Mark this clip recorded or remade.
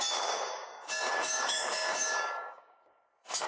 remade